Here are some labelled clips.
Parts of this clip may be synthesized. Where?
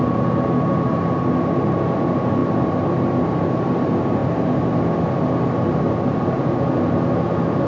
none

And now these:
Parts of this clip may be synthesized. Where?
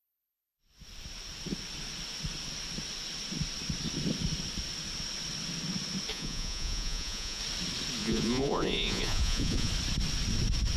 6.1-7.4 (vocoder, Vocos); 8.0-9.7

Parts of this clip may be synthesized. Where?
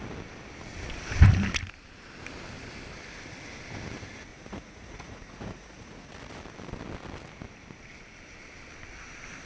4.3-6.1 (vocoder, Vocos)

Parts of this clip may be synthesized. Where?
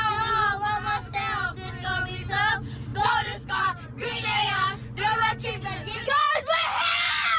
2.9-5.3 (vocoder, Vocos); 5.9-7.4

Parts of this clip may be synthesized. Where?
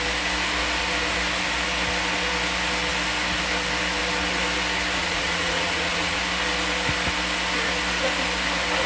5.0-6.2 (vocoder, Vocos)